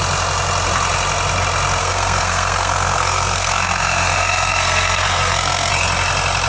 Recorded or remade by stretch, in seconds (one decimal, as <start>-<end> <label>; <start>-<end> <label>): 0.0-1.8 recorded; 1.8-5.7 remade; 5.7-6.5 recorded